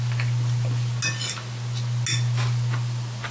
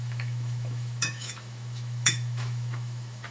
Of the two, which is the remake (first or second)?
second